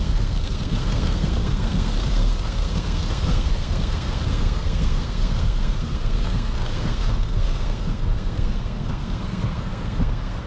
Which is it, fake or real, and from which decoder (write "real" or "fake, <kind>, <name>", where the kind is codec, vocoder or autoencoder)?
fake, codec, SNAC